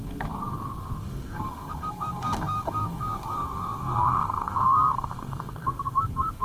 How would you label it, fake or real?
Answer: fake